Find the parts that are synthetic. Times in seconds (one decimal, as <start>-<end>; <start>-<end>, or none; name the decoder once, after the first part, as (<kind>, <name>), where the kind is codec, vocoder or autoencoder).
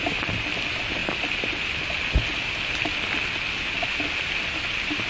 none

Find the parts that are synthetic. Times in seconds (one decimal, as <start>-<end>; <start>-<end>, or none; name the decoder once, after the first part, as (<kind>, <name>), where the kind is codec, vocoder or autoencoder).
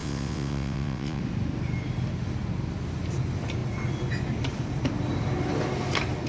0.0-1.2 (vocoder, WaveNeXt)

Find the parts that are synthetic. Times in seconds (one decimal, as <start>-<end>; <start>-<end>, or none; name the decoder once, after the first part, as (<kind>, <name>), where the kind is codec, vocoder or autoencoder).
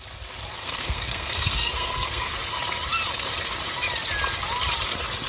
0.6-2.3 (codec, SNAC)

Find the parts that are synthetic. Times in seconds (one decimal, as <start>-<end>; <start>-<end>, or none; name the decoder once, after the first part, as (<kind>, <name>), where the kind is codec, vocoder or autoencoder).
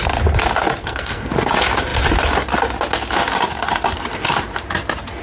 0.8-1.3 (codec, SNAC)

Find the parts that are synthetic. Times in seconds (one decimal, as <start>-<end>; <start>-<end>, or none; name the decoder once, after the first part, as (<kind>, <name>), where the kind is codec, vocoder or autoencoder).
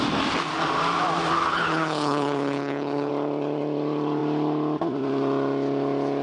1.5-3.1 (codec, HILCodec)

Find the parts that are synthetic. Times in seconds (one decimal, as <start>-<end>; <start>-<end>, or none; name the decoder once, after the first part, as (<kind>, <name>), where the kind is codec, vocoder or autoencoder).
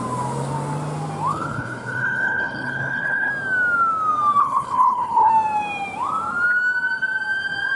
1.3-3.3 (codec, HILCodec); 4.4-5.3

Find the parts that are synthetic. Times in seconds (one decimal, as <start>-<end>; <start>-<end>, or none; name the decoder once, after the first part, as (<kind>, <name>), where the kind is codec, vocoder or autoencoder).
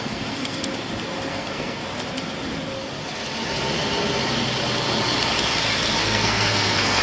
0.0-0.7 (codec, SNAC); 1.3-1.8; 6.0-7.0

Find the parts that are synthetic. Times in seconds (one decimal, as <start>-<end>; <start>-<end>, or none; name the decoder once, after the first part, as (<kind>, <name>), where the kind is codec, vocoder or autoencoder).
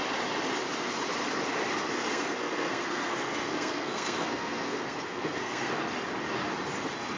2.1-5.7 (codec, SNAC)